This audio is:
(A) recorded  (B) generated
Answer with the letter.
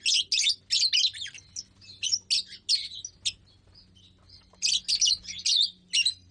A